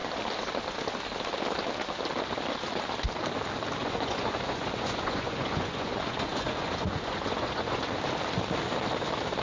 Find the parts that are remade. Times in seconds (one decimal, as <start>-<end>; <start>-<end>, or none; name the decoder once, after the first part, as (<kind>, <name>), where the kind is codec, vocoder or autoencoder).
3.8-7.8 (vocoder, Vocos)